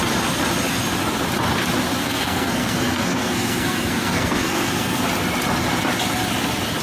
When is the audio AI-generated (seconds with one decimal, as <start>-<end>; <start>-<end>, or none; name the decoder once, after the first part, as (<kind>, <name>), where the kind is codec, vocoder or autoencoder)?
2.0-5.0 (codec, SNAC)